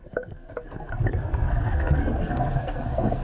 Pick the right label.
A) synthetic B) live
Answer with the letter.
A